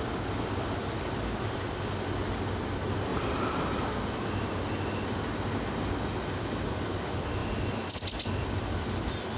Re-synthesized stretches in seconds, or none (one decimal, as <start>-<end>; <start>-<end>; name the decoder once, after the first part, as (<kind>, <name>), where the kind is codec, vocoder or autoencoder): 3.1-3.9 (vocoder, BigVGAN v2)